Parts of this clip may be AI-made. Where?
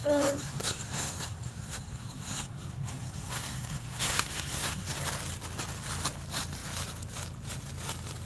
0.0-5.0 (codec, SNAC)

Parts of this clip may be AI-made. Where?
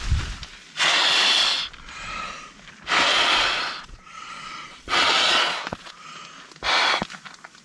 3.1-5.9 (vocoder, Vocos)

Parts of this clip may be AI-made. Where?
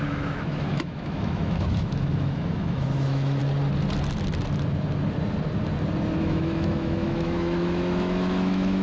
0.0-3.4 (autoencoder, DAC-VAE); 6.2-8.8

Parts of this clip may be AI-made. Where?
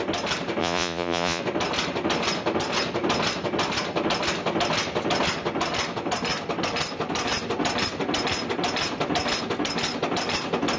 0.6-1.4 (vocoder, Vocos)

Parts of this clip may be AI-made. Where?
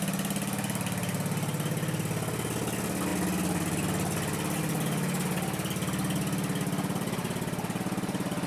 none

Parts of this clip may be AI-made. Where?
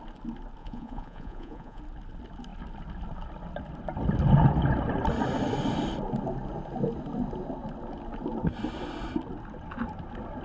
0.6-1.8 (vocoder, Vocos)